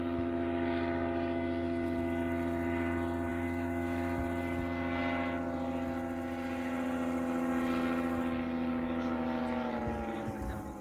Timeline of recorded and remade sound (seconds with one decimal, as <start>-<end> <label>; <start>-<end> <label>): 0.0-3.3 recorded; 3.3-4.2 remade; 4.2-10.8 recorded